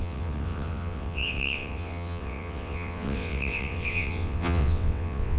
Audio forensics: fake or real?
fake